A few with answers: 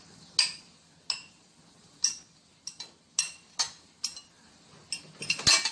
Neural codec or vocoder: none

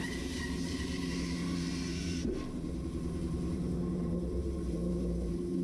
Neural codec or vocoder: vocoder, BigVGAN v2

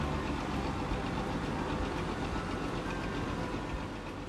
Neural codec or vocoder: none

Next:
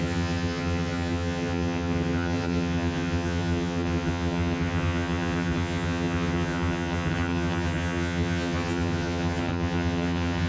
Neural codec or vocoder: vocoder, HiFi-GAN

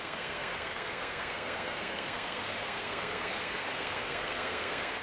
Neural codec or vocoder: codec, SNAC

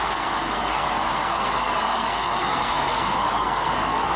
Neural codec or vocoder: codec, SNAC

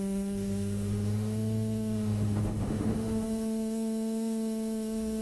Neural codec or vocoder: autoencoder, DAC-VAE